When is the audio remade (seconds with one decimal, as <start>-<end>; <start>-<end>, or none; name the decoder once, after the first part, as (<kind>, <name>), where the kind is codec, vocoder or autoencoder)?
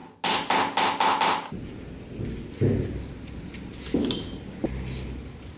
none